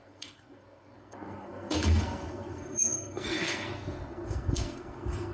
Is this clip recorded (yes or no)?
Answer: no